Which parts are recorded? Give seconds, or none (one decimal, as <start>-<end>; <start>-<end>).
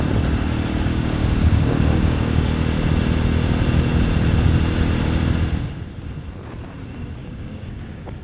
0.0-0.9; 2.5-7.2